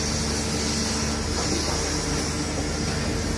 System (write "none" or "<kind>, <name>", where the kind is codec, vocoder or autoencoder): none